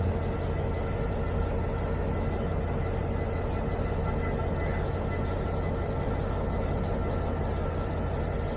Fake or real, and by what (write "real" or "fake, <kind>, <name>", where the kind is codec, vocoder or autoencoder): real